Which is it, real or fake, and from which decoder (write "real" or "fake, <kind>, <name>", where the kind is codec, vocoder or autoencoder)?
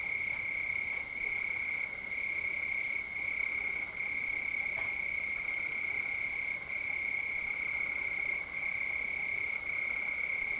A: real